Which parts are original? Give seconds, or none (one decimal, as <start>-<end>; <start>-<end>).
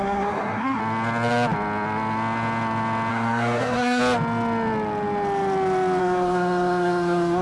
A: 0.8-3.1; 4.0-6.0